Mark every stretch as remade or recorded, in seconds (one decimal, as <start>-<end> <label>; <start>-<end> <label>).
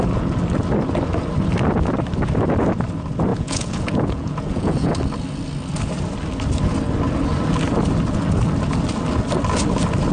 0.0-3.3 recorded; 3.3-4.9 remade; 4.9-10.1 recorded